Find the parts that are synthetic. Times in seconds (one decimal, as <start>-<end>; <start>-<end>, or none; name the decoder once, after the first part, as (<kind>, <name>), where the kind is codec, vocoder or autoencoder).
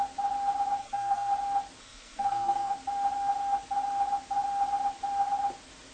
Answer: 0.8-1.3 (codec, SNAC); 1.8-2.7